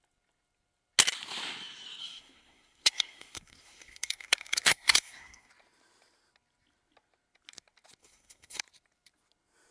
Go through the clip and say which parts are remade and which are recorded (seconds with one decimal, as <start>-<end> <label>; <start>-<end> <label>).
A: 0.0-2.0 recorded; 2.0-5.5 remade; 5.5-8.0 recorded; 8.0-8.6 remade; 8.6-9.7 recorded